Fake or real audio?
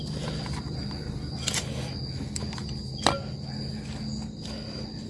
real